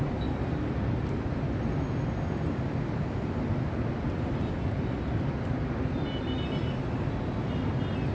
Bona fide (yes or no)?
yes